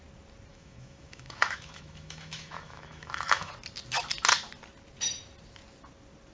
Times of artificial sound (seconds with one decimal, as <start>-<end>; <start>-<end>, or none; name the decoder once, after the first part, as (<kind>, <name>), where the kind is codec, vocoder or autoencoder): 0.5-3.5 (autoencoder, DAC-VAE)